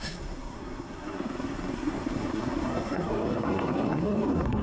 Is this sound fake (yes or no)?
yes